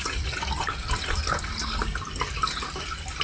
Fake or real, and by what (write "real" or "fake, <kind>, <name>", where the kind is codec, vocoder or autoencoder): real